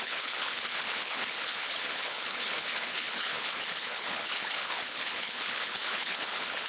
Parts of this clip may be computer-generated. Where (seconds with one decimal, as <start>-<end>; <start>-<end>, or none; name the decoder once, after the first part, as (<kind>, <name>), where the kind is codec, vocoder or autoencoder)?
0.0-6.7 (codec, HILCodec)